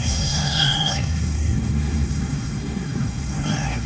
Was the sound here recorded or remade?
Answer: remade